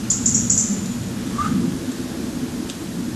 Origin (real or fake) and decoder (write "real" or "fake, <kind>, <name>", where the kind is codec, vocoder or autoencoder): real